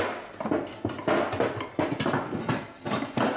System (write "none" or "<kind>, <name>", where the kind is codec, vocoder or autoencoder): none